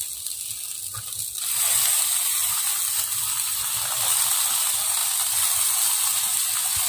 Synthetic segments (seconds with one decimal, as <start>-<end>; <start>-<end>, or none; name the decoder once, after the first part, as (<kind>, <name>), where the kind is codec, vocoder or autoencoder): none